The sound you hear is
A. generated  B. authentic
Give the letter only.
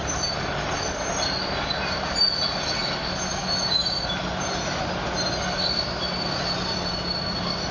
B